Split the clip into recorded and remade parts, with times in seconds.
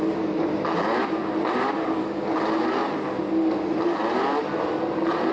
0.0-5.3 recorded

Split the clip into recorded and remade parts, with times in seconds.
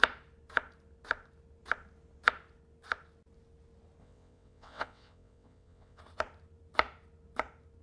0.0-4.0 recorded; 4.0-6.0 remade; 6.0-7.8 recorded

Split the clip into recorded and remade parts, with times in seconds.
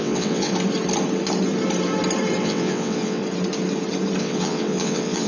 0.0-0.5 remade; 0.5-2.4 recorded; 2.4-3.2 remade; 3.2-4.2 recorded; 4.2-5.3 remade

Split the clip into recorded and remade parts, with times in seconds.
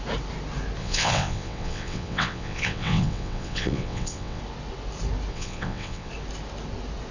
0.0-0.8 recorded; 0.8-4.4 remade; 4.4-5.3 recorded; 5.3-6.1 remade; 6.1-7.1 recorded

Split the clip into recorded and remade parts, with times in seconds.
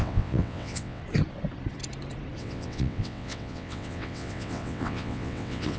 0.0-1.0 remade; 1.0-2.4 recorded; 2.4-5.8 remade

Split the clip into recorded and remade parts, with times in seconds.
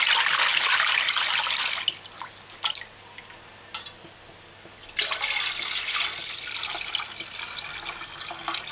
0.0-8.7 recorded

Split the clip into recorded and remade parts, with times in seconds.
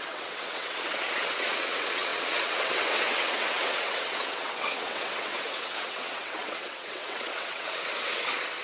0.0-8.6 remade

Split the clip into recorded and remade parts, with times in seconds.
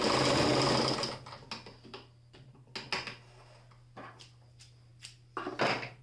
0.0-6.0 recorded